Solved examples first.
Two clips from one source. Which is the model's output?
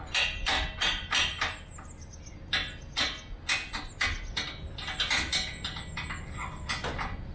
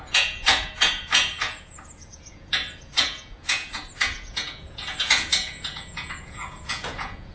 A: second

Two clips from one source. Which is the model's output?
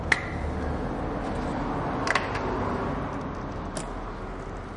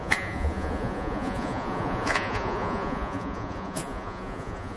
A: second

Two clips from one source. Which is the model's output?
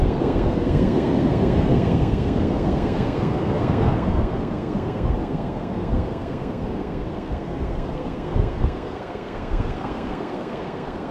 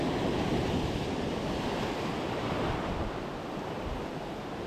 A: first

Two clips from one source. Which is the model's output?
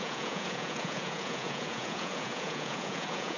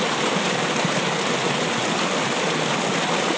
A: first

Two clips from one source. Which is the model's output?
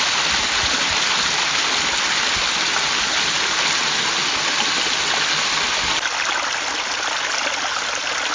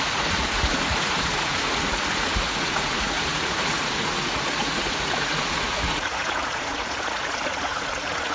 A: second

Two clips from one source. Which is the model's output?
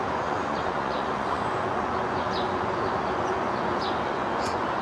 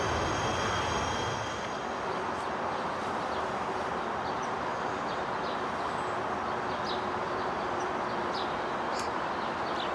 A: first